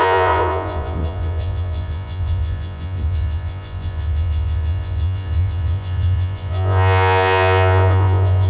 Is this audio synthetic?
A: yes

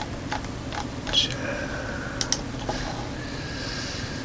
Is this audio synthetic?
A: no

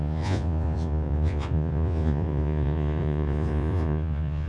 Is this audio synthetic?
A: yes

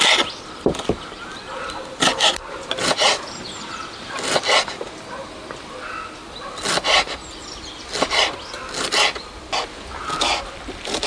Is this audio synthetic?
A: no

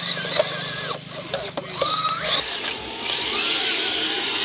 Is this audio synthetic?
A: no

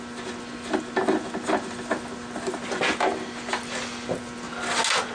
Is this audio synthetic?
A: no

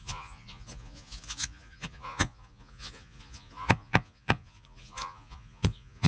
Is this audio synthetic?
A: yes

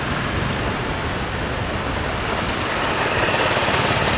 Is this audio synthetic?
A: no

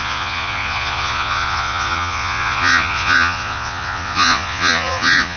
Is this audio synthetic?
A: yes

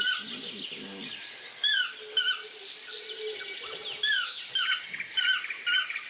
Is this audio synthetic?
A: no